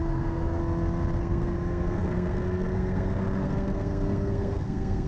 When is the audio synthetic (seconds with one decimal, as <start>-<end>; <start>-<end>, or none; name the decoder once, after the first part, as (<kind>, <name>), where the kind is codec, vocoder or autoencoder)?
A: 0.0-0.6 (codec, SNAC); 1.2-5.1